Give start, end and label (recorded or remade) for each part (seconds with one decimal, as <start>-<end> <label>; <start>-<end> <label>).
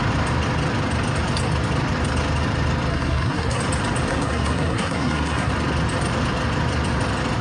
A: 0.0-2.9 recorded; 2.9-3.6 remade; 3.6-4.1 recorded; 4.1-5.5 remade; 5.5-7.4 recorded